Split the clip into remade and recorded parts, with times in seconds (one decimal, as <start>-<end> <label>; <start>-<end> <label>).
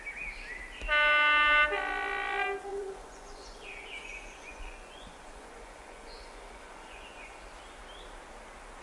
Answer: 0.0-2.7 recorded; 2.7-7.5 remade; 7.5-8.8 recorded